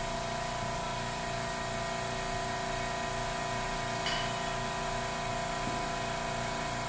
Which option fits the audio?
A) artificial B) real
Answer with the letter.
B